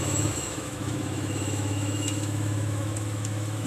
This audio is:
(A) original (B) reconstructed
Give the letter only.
B